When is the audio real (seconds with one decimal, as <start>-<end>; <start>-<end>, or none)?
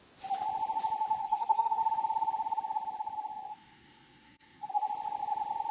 0.0-1.2; 1.8-3.5; 4.7-5.7